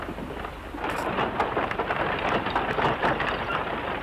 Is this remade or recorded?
remade